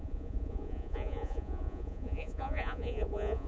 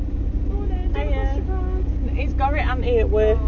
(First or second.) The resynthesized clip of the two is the first